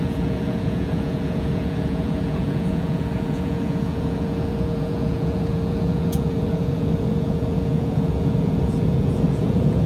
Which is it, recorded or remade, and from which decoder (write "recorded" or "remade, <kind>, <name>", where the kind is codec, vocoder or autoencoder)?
remade, vocoder, Vocos